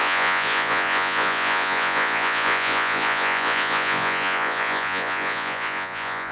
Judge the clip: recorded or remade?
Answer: remade